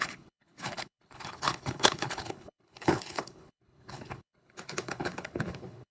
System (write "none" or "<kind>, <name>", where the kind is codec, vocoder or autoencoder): codec, HILCodec